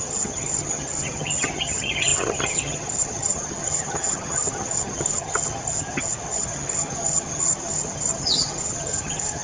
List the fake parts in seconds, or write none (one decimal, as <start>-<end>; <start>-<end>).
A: 0.0-9.4